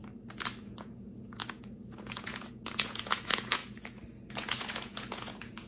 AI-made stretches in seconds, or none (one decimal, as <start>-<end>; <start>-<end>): 0.6-3.6; 4.3-5.7